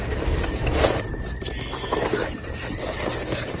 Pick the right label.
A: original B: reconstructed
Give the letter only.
B